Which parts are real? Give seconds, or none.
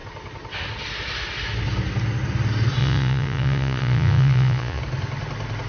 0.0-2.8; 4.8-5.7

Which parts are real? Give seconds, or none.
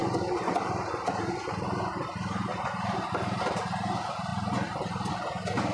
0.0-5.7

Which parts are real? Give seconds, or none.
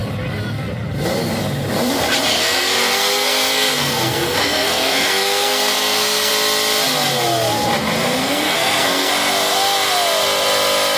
0.0-2.3; 6.3-8.2; 9.1-11.0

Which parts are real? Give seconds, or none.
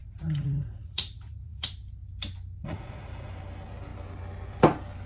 1.7-2.6; 3.3-5.1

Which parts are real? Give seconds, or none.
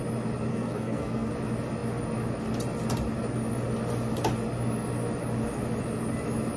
0.0-0.5; 1.3-6.6